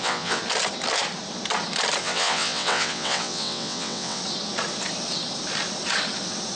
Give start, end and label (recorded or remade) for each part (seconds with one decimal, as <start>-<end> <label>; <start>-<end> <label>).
0.0-0.4 remade; 0.4-2.0 recorded; 2.0-4.2 remade; 4.2-6.6 recorded